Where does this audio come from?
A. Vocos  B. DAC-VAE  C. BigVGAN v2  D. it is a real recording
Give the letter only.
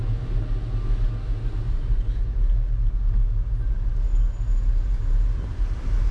D